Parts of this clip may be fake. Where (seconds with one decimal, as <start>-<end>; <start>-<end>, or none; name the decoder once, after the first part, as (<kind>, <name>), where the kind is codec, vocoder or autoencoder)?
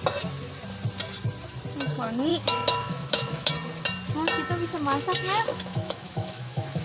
2.3-3.5 (autoencoder, DAC-VAE); 5.5-6.8